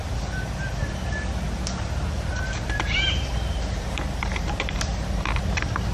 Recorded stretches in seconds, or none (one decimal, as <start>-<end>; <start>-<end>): 0.0-2.3; 5.4-5.9